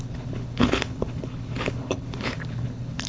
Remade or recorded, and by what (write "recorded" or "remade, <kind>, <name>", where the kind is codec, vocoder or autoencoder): remade, codec, HILCodec